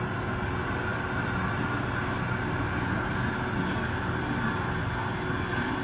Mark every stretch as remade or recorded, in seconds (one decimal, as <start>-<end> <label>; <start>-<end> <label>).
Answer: 0.0-5.8 recorded